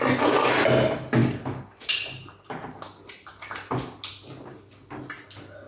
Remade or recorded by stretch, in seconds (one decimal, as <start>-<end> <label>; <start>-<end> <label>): 0.0-5.7 recorded